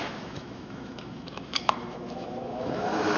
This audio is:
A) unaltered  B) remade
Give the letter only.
B